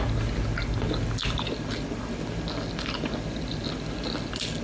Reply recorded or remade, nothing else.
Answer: recorded